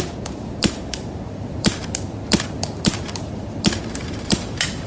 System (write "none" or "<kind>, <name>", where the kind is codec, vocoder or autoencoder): vocoder, BigVGAN v2